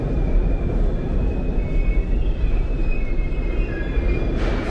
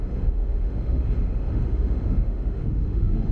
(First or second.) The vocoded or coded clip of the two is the second